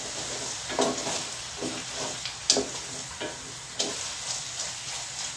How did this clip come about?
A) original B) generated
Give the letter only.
A